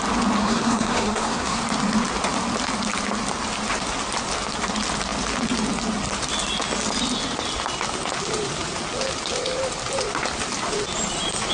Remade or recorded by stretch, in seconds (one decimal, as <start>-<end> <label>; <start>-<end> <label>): 0.0-0.4 recorded; 0.4-1.6 remade; 1.6-11.5 recorded